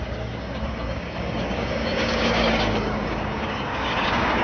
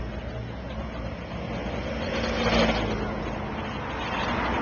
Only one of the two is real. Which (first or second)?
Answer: second